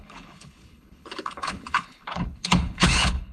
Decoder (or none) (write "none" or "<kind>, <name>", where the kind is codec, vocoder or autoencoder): codec, HILCodec